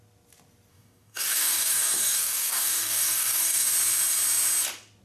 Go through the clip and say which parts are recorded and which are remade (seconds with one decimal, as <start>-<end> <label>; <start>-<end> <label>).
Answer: 0.0-0.7 recorded; 0.7-3.7 remade; 3.7-5.0 recorded